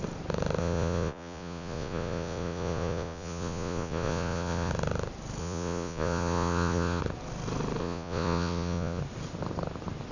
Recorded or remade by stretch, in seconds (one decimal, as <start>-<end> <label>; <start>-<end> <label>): 0.0-0.6 recorded; 0.6-4.7 remade; 4.7-5.4 recorded; 5.4-7.0 remade; 7.0-7.8 recorded; 7.8-9.0 remade; 9.0-10.1 recorded